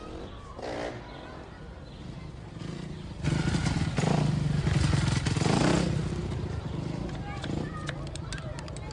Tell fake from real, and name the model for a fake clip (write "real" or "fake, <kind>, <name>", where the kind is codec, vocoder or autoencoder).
real